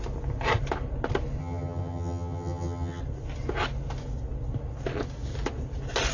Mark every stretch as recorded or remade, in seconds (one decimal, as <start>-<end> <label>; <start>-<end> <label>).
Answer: 0.0-1.4 recorded; 1.4-3.0 remade; 3.0-6.1 recorded